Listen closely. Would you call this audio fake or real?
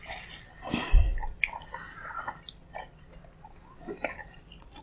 real